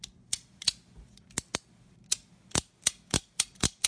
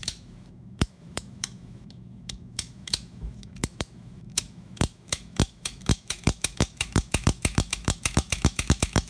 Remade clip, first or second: second